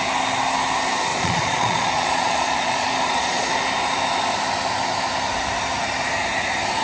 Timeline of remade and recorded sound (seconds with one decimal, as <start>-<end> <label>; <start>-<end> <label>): 0.0-1.1 recorded; 1.1-3.5 remade; 3.5-6.8 recorded